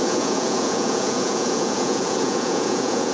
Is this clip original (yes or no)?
no